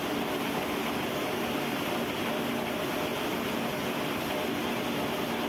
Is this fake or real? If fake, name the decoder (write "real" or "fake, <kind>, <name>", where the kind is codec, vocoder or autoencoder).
real